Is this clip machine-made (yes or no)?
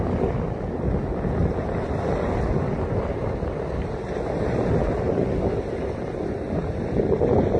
no